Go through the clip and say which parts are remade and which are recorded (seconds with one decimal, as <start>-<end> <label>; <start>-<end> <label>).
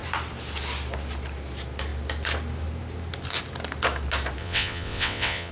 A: 0.0-4.4 recorded; 4.4-5.5 remade